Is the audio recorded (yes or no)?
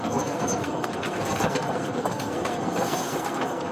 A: no